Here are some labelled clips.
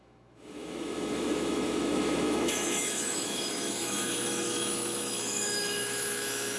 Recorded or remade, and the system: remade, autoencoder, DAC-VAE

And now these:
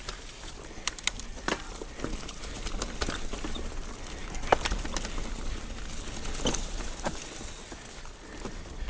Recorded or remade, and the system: recorded